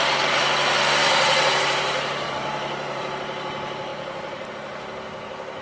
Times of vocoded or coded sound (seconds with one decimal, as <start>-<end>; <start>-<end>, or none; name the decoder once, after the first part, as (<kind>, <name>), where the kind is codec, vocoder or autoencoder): 1.0-3.1 (vocoder, BigVGAN v2)